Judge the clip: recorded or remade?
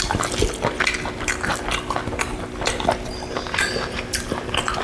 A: recorded